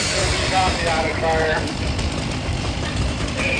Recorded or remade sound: remade